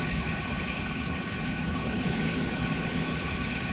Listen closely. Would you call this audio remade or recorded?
remade